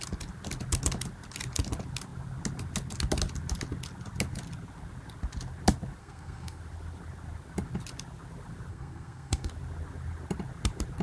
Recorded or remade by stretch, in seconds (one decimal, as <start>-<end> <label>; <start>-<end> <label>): 0.0-6.0 recorded; 6.0-6.6 remade; 6.6-8.7 recorded; 8.7-9.5 remade; 9.5-11.0 recorded